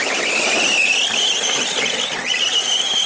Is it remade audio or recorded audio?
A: recorded